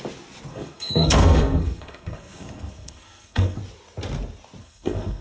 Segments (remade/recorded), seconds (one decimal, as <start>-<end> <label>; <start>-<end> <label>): 0.0-0.5 recorded; 0.5-3.6 remade; 3.6-4.6 recorded; 4.6-5.2 remade